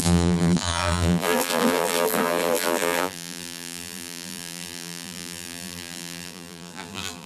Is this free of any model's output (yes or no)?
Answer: no